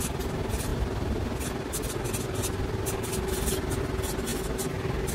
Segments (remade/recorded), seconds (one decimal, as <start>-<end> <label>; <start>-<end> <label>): 0.0-5.1 recorded